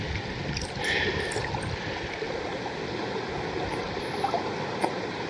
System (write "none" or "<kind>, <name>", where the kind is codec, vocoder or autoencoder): none